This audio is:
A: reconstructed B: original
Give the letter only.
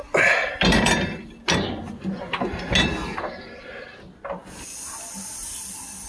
B